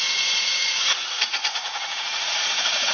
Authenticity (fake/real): fake